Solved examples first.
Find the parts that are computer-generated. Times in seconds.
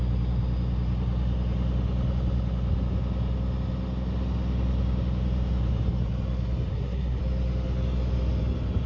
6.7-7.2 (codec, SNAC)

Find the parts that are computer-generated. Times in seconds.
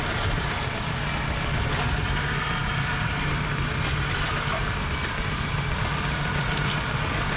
none